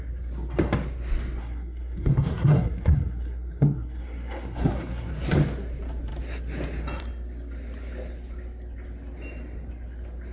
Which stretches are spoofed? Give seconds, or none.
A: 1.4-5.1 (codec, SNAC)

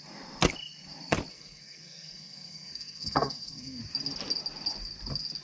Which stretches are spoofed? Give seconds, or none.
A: 1.3-3.8 (codec, SNAC)